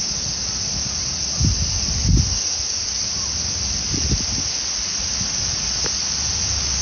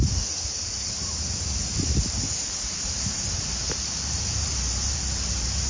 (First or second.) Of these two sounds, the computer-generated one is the second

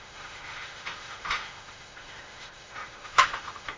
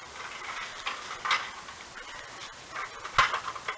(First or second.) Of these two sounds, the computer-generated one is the first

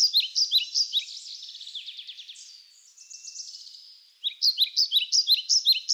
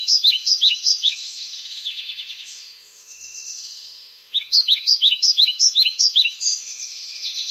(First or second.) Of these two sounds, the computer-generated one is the second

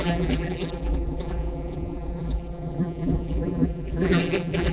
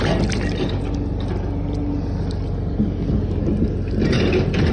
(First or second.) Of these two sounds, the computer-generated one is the first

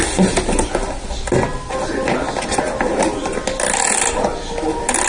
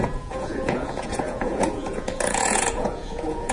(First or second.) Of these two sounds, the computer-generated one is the second